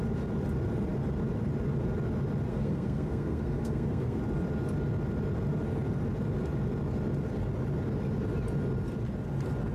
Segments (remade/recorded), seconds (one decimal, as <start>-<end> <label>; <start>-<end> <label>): 0.0-2.5 recorded; 2.5-4.2 remade; 4.2-9.7 recorded